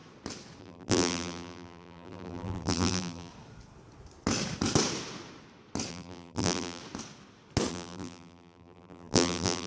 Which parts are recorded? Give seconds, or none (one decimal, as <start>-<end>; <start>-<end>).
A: 0.0-0.6; 3.3-5.9; 6.8-7.7